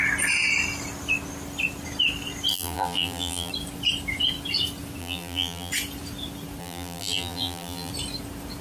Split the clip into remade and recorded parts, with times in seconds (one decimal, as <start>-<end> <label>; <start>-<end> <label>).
0.0-2.5 recorded; 2.5-3.5 remade; 3.5-5.0 recorded; 5.0-5.7 remade; 5.7-6.6 recorded; 6.6-7.9 remade; 7.9-8.6 recorded